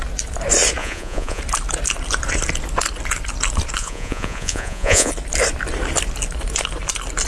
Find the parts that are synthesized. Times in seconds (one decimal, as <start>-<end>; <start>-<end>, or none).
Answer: 0.8-1.4; 3.8-5.1